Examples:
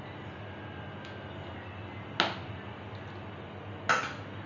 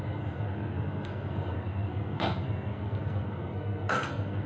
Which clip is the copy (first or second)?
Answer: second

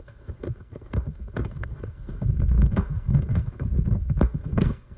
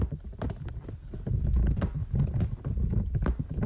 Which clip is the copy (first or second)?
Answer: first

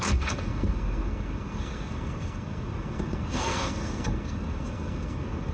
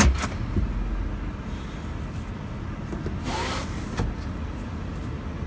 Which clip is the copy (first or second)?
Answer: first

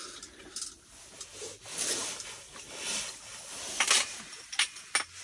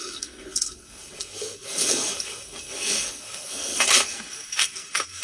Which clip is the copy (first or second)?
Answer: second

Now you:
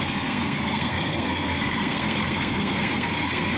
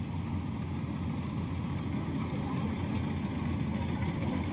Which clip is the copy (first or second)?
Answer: first